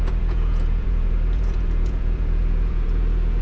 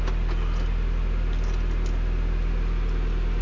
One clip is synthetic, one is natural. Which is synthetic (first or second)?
first